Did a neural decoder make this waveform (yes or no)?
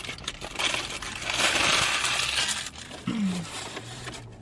no